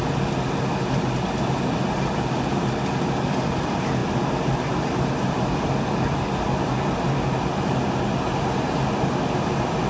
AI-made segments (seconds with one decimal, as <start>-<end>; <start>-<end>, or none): none